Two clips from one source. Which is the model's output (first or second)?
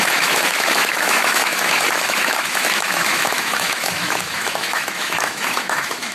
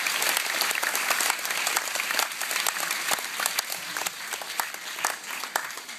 first